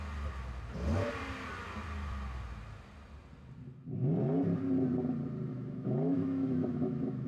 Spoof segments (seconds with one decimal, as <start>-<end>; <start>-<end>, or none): 5.5-7.3